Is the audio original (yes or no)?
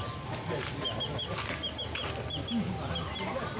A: yes